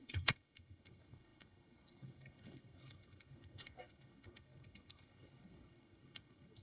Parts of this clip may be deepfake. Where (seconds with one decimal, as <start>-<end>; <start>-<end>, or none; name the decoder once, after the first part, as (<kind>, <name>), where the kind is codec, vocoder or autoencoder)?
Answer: 0.0-6.6 (codec, SNAC)